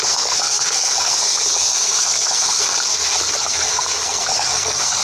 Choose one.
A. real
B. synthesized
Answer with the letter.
B